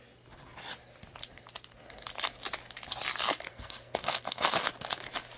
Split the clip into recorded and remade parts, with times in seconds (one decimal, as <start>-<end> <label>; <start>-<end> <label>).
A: 0.0-3.5 recorded; 3.5-4.7 remade; 4.7-5.4 recorded